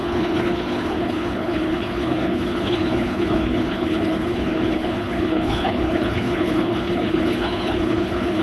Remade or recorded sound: remade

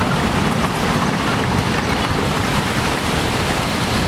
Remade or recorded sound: remade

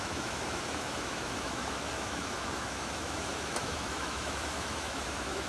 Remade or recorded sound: remade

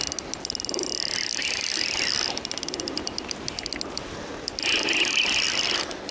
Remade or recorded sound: recorded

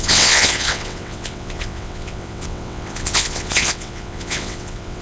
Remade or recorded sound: remade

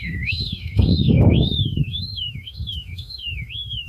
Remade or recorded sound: remade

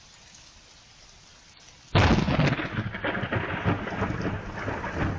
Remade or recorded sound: recorded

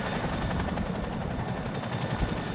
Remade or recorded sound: recorded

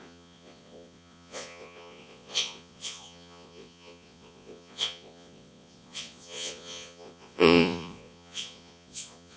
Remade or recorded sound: remade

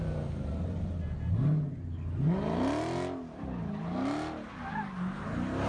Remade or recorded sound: recorded